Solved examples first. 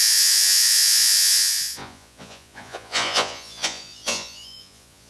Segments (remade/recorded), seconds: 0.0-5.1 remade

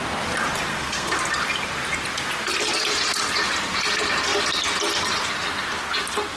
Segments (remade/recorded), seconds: 0.0-0.7 recorded; 0.7-1.2 remade; 1.2-6.4 recorded